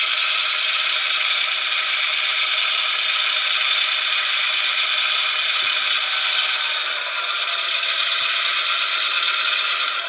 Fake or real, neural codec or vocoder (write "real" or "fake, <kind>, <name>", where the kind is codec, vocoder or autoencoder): fake, vocoder, BigVGAN v2